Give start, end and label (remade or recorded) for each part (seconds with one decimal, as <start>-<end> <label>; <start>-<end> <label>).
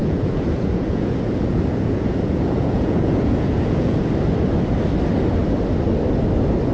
0.0-4.0 remade; 4.0-6.7 recorded